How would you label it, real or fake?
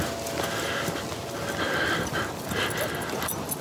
real